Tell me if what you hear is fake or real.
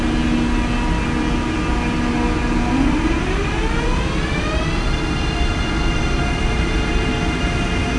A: real